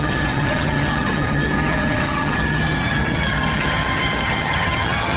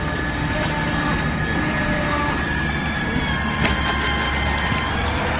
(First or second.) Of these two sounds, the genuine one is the second